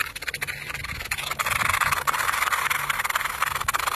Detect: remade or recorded recorded